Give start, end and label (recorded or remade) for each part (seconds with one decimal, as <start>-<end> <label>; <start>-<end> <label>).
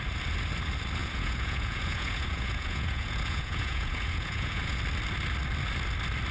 0.0-1.0 recorded; 1.0-4.8 remade; 4.8-6.3 recorded